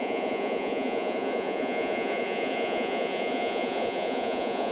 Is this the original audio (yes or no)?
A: no